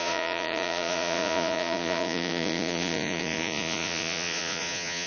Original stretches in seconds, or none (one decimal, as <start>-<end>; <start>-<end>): none